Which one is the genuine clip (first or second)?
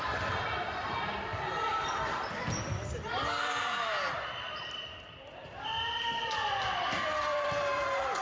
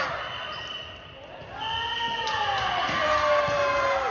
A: second